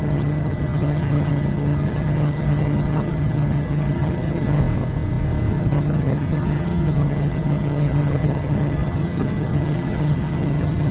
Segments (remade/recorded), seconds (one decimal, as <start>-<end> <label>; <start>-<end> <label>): 0.0-4.6 remade; 4.6-5.5 recorded; 5.5-10.9 remade